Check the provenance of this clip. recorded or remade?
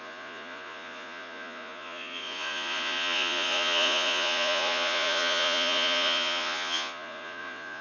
remade